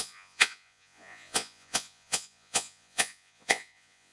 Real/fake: fake